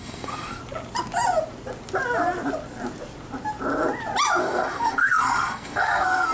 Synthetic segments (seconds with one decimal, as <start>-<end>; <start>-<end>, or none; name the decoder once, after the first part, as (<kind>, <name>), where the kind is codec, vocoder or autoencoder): 0.0-0.6 (codec, SNAC); 4.4-6.3